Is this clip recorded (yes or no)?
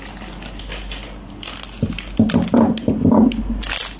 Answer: yes